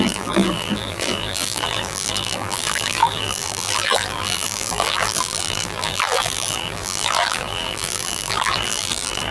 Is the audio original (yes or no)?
no